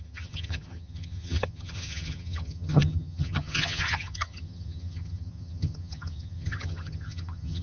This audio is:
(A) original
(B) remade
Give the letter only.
B